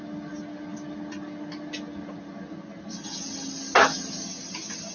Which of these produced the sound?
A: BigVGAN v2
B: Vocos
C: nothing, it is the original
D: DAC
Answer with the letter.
C